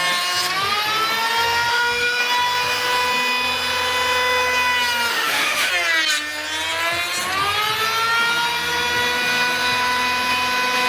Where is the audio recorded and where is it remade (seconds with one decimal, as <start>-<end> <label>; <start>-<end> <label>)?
0.0-1.7 recorded; 1.7-2.2 remade; 2.2-5.1 recorded; 5.1-5.7 remade; 5.7-10.9 recorded